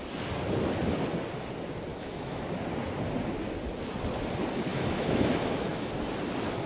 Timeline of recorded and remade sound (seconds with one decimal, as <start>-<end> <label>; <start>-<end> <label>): 0.0-1.9 recorded; 1.9-2.4 remade; 2.4-4.7 recorded; 4.7-5.9 remade; 5.9-6.7 recorded